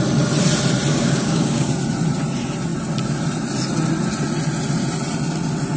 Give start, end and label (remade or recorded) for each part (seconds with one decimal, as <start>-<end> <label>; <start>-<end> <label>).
0.0-0.9 recorded; 0.9-1.7 remade; 1.7-5.8 recorded